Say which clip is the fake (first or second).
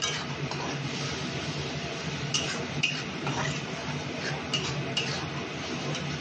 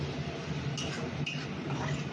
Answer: first